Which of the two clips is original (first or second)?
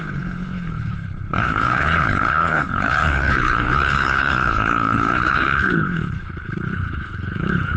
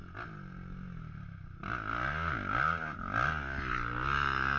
second